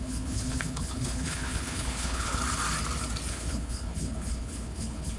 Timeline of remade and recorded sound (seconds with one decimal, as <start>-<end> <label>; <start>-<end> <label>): 0.0-2.4 remade; 2.4-3.3 recorded; 3.3-5.2 remade